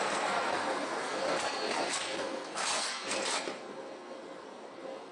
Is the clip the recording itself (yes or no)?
no